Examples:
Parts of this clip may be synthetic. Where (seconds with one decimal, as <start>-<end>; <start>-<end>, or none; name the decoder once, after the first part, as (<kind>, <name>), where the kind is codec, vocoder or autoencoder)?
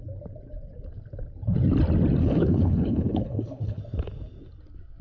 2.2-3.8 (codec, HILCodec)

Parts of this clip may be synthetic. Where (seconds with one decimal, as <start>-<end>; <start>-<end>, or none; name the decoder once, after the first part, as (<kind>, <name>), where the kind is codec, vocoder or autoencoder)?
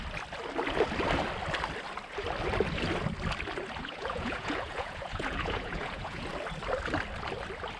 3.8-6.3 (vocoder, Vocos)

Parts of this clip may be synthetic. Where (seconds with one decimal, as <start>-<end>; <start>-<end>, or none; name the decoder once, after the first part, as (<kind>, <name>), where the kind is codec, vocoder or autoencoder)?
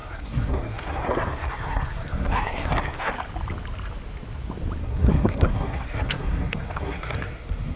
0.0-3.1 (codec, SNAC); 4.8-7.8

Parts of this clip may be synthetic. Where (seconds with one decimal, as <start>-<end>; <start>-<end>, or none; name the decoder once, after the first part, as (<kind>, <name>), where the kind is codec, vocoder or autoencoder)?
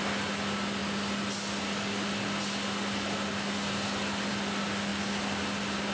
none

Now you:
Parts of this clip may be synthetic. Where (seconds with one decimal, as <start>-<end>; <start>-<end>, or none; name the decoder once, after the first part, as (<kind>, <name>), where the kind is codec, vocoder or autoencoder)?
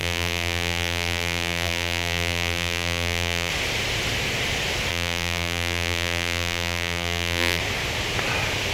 0.0-3.5 (vocoder, BigVGAN v2); 4.9-7.6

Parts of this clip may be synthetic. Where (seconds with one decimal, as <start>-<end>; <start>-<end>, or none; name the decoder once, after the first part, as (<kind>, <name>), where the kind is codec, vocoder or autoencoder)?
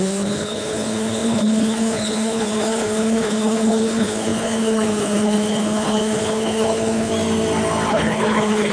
0.0-7.1 (codec, HILCodec); 7.9-8.7